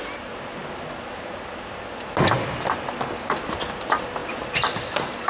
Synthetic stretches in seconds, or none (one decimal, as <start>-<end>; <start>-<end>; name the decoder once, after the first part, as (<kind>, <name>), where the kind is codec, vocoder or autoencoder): none